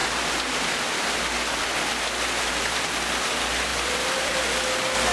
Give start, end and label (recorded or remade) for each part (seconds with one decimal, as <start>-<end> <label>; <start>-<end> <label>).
0.0-3.7 recorded; 3.7-4.3 remade; 4.3-5.1 recorded